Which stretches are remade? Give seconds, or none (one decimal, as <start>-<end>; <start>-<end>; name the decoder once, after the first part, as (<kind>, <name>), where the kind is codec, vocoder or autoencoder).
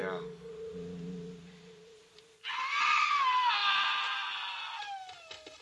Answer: 0.0-0.5 (codec, DAC)